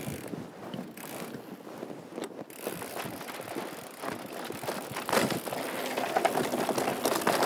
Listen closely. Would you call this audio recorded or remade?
recorded